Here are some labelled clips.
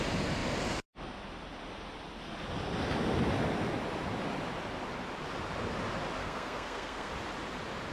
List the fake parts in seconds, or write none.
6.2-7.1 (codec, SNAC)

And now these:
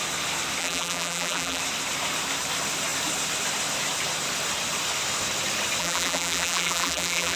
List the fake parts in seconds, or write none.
0.6-1.6 (vocoder, BigVGAN v2); 5.8-7.4

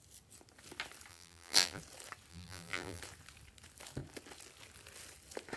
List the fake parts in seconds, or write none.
1.1-1.8 (vocoder, BigVGAN v2); 2.3-3.0